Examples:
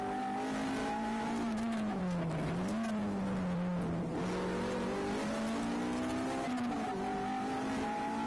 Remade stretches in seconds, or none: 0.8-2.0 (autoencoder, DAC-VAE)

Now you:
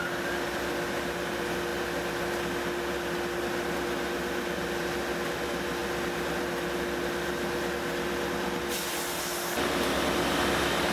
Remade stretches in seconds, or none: none

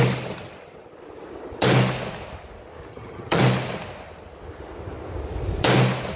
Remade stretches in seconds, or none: 2.9-3.4 (vocoder, HiFi-GAN)